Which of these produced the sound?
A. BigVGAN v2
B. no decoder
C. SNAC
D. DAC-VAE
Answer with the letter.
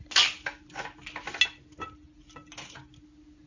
B